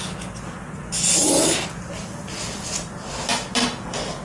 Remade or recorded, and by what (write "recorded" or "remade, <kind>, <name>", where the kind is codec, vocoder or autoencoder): recorded